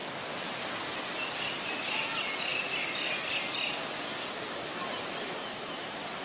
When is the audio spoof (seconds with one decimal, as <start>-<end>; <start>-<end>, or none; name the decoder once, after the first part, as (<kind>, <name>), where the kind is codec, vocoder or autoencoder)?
none

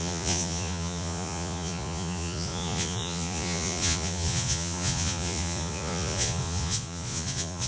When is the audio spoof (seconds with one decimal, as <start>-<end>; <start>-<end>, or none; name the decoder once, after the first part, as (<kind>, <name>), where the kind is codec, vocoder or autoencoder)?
0.0-7.7 (vocoder, Vocos)

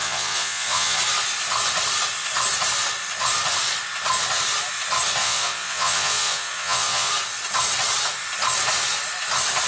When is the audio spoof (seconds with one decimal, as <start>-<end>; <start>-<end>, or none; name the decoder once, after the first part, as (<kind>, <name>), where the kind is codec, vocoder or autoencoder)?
0.0-1.0 (vocoder, Vocos); 5.2-7.1

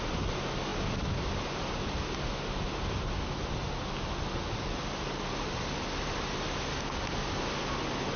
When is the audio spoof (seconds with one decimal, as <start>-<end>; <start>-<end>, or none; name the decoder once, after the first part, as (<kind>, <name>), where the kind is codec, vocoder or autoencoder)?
none